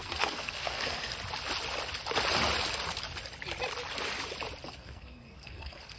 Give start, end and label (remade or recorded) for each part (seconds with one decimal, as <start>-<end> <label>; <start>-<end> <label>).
0.0-1.1 remade; 1.1-4.7 recorded; 4.7-6.0 remade

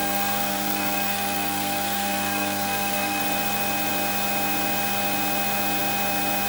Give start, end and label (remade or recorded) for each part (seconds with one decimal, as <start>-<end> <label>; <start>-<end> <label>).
0.0-3.2 remade; 3.2-6.5 recorded

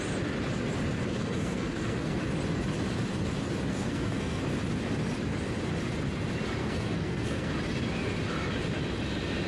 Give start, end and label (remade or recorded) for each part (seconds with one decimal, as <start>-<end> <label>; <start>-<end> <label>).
0.0-1.2 recorded; 1.2-2.2 remade; 2.2-3.7 recorded; 3.7-4.4 remade; 4.4-6.6 recorded; 6.6-7.5 remade; 7.5-9.5 recorded

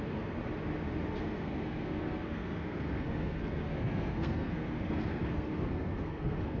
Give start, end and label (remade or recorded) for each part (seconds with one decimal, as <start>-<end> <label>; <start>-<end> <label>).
0.0-0.4 remade; 0.4-1.2 recorded; 1.2-6.6 remade

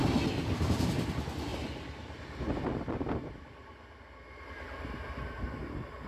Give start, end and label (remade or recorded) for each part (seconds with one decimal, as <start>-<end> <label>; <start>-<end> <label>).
0.0-6.1 recorded

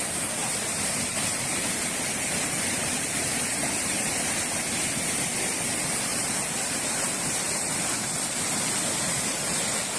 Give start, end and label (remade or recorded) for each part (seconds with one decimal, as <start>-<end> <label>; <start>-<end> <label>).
0.0-10.0 recorded